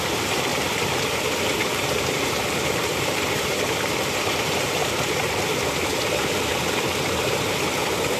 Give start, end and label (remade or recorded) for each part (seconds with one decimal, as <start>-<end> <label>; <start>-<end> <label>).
0.0-0.5 recorded; 0.5-5.4 remade; 5.4-5.9 recorded; 5.9-7.6 remade; 7.6-8.2 recorded